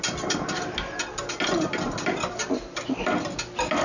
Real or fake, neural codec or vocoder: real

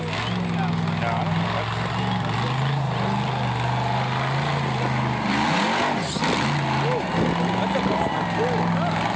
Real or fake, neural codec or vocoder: real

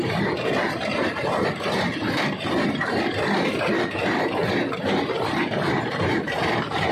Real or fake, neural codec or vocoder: fake, vocoder, BigVGAN v2